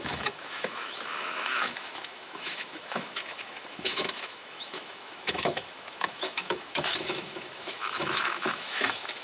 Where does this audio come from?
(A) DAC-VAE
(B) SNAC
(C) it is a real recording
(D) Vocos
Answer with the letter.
A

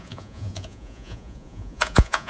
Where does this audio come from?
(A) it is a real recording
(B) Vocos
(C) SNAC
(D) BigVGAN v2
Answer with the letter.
B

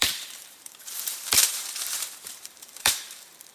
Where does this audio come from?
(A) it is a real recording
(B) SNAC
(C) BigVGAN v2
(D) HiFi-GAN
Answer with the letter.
C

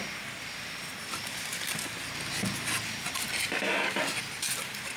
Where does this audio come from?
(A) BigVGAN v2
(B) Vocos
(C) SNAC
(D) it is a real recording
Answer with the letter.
D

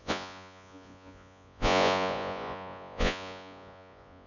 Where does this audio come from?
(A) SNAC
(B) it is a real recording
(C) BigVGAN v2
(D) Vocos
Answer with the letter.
D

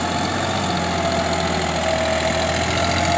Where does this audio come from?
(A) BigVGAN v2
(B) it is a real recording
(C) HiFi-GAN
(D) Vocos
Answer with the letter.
B